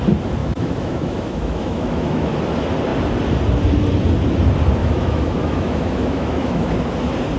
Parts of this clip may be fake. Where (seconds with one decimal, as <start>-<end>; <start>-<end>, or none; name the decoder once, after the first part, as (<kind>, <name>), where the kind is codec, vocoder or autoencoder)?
0.4-2.3 (autoencoder, DAC-VAE); 4.8-6.7